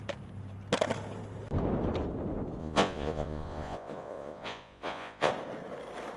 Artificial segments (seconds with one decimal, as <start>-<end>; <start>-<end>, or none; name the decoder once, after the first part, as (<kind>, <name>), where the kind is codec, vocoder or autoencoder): 2.6-5.3 (vocoder, Vocos)